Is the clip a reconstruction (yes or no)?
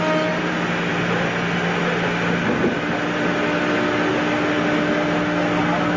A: no